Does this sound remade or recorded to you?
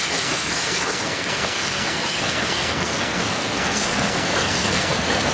remade